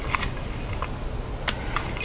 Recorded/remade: recorded